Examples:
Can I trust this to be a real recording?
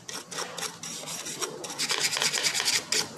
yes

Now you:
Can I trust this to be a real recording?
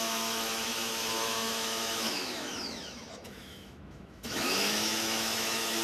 no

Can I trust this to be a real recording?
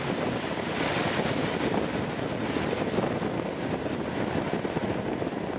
yes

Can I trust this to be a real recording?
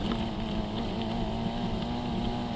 yes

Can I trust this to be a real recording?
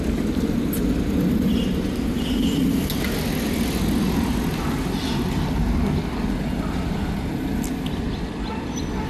yes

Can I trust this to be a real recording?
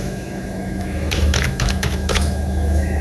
no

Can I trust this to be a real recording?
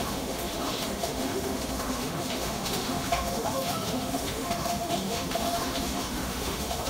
no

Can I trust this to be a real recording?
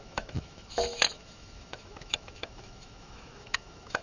no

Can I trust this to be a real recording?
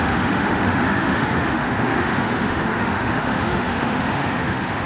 no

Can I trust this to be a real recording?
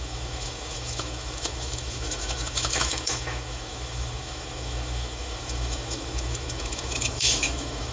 no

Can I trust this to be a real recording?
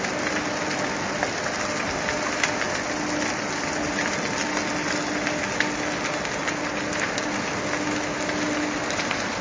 yes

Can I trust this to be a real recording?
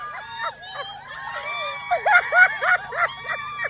yes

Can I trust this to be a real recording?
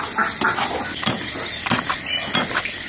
yes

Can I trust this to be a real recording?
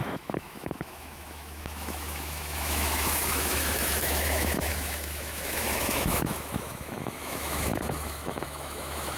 no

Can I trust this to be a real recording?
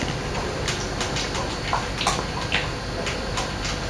yes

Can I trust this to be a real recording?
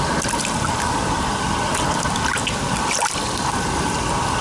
yes